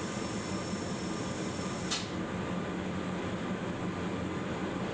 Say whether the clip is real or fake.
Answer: real